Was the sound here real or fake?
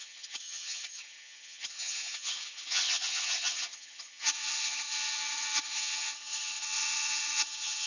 fake